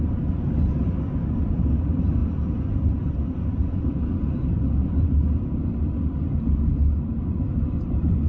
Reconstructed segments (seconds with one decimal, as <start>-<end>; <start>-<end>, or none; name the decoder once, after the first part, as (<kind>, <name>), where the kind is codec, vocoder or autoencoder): none